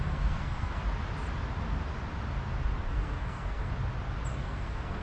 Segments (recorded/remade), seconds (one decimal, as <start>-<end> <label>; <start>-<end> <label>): 0.0-0.8 remade; 0.8-2.9 recorded; 2.9-3.7 remade; 3.7-4.3 recorded; 4.3-5.0 remade